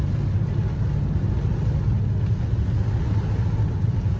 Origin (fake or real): real